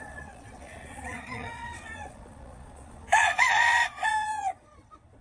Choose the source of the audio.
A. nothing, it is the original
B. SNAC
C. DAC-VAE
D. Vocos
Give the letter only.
D